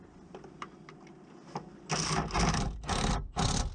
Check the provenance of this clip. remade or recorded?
recorded